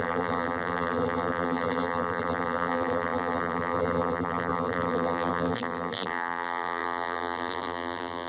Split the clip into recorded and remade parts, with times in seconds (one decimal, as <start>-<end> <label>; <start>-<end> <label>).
0.0-8.3 remade